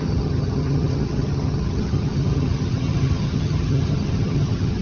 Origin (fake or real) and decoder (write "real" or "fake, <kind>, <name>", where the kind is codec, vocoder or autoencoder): fake, vocoder, HiFi-GAN